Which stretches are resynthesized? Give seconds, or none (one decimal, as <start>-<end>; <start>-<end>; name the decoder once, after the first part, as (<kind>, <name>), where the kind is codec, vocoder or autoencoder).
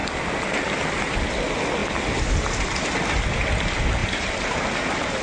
4.0-4.6 (vocoder, BigVGAN v2)